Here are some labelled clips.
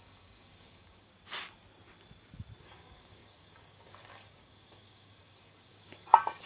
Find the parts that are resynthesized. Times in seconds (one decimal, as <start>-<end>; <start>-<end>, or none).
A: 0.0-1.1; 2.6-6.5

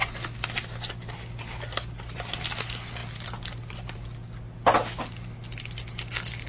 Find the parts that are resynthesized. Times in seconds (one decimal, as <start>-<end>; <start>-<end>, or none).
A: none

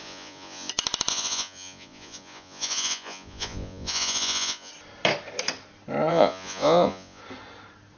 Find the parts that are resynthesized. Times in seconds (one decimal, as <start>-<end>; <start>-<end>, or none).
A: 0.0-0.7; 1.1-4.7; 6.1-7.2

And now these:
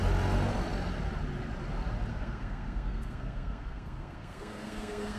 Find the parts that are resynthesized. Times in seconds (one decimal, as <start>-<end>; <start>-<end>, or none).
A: 2.1-5.2

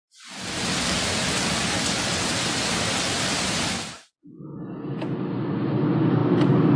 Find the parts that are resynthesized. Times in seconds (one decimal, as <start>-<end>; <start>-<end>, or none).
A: none

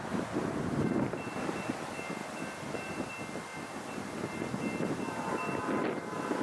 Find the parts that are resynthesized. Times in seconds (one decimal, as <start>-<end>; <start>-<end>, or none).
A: 2.2-3.1

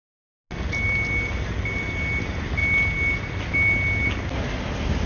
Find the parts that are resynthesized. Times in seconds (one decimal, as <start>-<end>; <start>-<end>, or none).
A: none